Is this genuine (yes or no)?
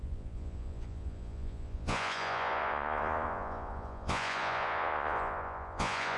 no